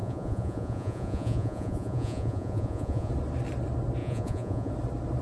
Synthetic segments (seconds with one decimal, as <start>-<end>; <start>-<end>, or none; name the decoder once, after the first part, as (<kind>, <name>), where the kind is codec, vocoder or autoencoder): 0.0-3.1 (vocoder, Vocos); 4.0-4.7